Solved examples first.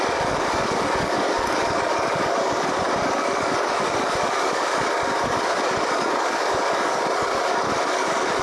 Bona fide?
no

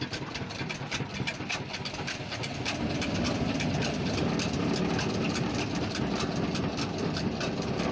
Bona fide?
yes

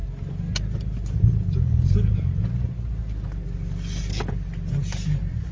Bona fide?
yes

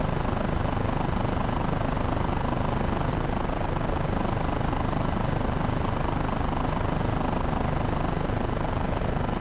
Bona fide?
yes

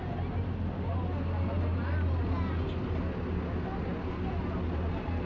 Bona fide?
yes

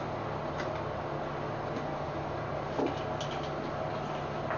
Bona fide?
yes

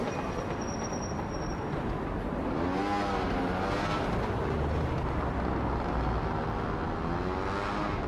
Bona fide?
yes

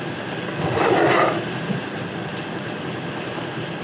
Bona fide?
yes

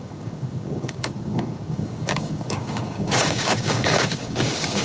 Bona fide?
no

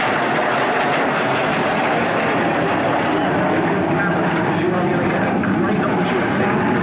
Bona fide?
yes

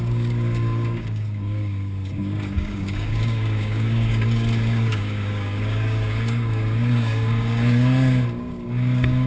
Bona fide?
no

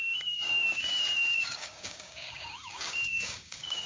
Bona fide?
no